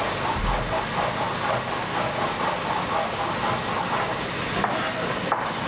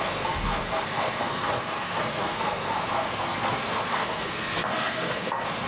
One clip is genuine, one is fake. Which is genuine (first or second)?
first